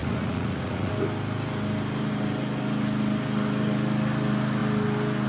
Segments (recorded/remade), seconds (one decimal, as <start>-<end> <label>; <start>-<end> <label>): 0.0-0.9 remade; 0.9-5.3 recorded